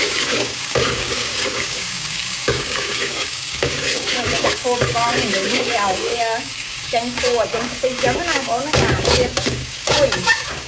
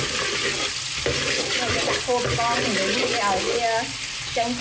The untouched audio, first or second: second